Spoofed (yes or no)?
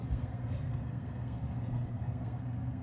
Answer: yes